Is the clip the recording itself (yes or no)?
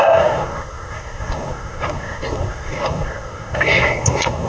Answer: no